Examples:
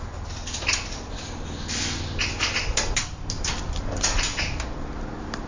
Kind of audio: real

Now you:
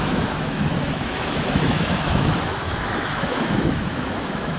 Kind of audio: fake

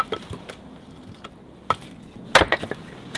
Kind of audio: real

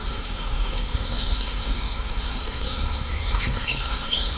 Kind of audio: fake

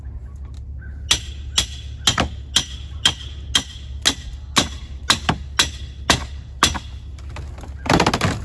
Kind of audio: real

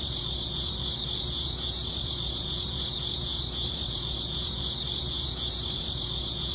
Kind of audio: fake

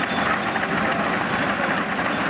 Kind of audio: real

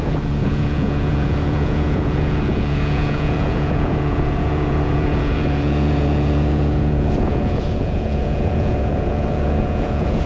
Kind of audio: fake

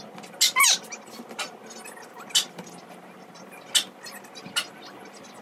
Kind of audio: real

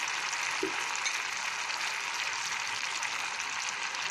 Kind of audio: real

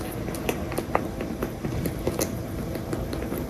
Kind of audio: real